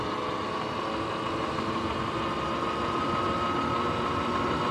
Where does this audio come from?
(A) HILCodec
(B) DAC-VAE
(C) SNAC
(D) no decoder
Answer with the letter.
D